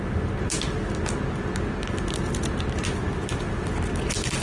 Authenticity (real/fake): real